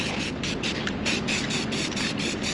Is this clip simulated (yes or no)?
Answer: yes